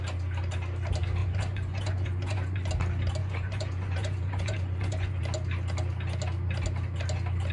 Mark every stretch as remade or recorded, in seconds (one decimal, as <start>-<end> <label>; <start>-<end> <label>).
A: 0.0-1.2 recorded; 1.2-2.7 remade; 2.7-3.2 recorded; 3.2-5.2 remade; 5.2-7.5 recorded